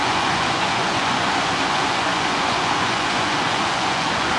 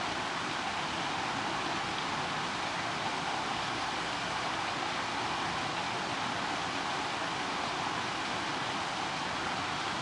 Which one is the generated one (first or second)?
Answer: first